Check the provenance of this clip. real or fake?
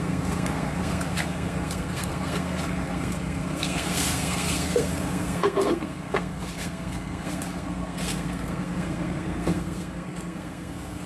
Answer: fake